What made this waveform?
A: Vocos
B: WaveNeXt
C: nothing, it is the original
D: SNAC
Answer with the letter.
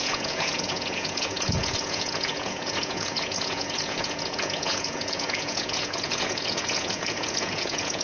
A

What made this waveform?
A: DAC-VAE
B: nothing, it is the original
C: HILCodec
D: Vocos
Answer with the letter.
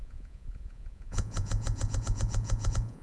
D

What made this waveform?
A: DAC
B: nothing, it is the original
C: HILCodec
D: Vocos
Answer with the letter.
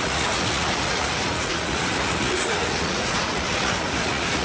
D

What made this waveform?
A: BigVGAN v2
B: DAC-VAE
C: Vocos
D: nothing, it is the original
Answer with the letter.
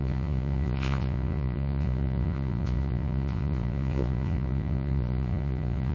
C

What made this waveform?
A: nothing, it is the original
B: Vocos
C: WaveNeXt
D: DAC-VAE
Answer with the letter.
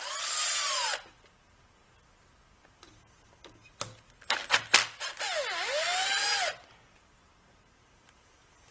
A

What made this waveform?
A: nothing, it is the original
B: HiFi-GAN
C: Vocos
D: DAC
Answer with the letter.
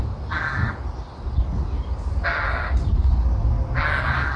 A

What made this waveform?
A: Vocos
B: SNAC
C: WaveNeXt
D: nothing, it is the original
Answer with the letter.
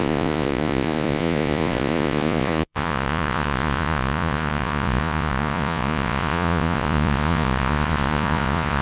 A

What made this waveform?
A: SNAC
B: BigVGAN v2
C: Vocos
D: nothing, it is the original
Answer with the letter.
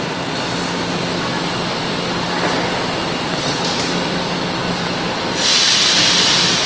D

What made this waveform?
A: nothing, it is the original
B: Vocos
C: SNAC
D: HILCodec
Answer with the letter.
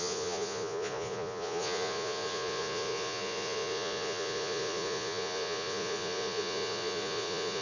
B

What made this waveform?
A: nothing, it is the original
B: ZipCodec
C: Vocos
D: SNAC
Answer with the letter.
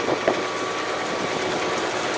A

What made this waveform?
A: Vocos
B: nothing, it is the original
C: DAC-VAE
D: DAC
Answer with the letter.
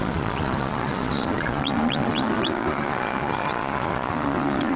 A